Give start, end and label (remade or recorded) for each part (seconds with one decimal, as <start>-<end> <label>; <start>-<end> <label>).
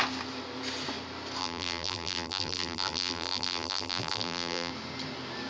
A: 0.0-1.4 recorded; 1.4-4.7 remade; 4.7-5.5 recorded